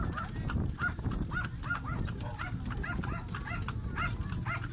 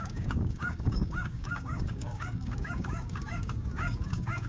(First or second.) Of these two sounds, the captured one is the first